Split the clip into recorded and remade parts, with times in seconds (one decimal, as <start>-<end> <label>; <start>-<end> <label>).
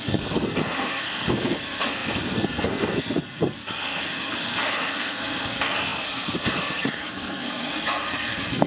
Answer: 0.0-8.7 remade